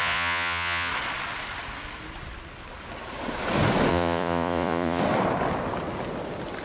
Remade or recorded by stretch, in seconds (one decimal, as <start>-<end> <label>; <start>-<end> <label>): 0.0-0.9 remade; 0.9-3.9 recorded; 3.9-5.0 remade; 5.0-6.6 recorded